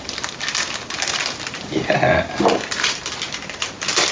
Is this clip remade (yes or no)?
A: no